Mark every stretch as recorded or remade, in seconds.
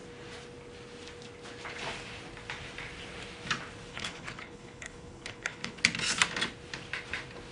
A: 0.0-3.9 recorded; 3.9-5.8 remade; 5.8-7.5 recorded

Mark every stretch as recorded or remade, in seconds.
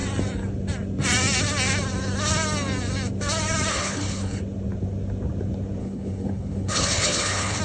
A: 0.0-3.7 recorded; 3.7-4.4 remade; 4.4-5.8 recorded; 5.8-7.6 remade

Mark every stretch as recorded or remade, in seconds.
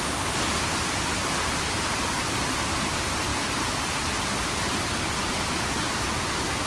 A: 0.0-6.7 recorded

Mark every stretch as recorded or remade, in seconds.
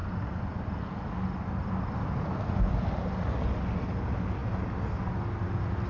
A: 0.0-5.9 recorded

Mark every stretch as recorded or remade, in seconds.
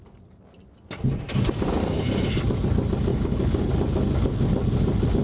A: 0.0-3.1 recorded; 3.1-3.7 remade; 3.7-5.2 recorded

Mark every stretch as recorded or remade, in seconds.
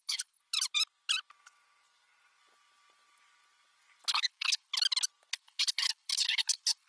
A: 0.0-0.4 remade; 0.4-4.1 recorded; 4.1-4.7 remade; 4.7-5.3 recorded; 5.3-6.9 remade